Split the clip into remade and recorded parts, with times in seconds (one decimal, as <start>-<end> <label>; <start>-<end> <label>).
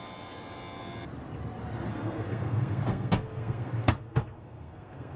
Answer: 0.0-1.9 recorded; 1.9-5.2 remade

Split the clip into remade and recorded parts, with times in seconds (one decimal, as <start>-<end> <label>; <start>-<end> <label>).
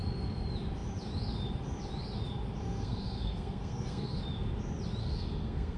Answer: 0.0-2.6 recorded; 2.6-4.2 remade; 4.2-5.0 recorded; 5.0-5.8 remade